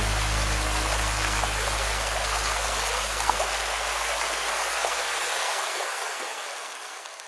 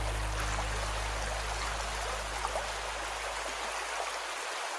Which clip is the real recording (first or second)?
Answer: second